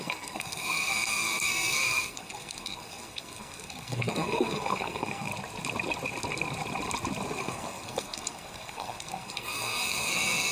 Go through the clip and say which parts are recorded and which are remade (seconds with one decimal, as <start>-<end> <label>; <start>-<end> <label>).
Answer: 0.0-5.3 remade; 5.3-7.4 recorded; 7.4-10.5 remade